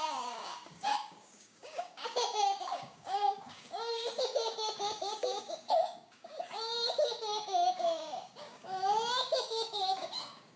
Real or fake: fake